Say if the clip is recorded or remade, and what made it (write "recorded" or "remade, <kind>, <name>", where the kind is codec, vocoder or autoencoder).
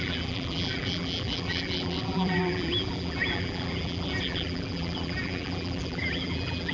remade, vocoder, BigVGAN v2